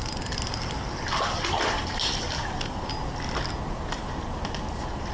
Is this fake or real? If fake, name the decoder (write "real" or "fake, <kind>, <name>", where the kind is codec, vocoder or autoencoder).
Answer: real